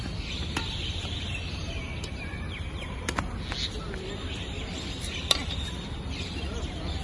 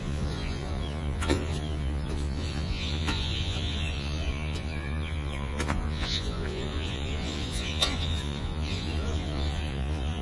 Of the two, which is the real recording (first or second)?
first